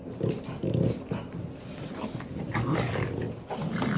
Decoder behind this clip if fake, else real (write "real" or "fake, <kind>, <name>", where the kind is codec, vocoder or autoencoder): real